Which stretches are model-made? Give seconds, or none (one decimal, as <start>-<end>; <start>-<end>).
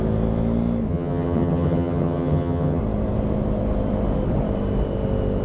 0.9-2.8